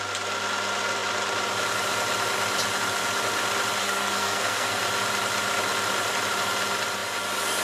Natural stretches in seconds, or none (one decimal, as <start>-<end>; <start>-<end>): 0.0-3.8; 4.8-7.6